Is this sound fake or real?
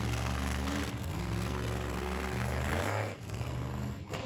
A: fake